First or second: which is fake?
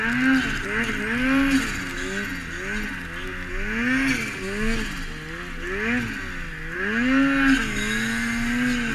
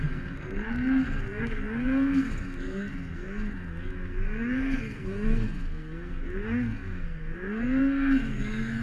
second